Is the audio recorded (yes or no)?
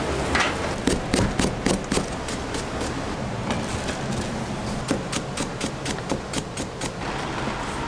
yes